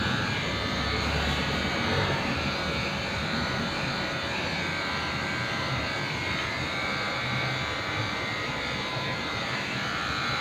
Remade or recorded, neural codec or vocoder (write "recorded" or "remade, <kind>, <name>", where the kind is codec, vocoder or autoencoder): remade, vocoder, BigVGAN v2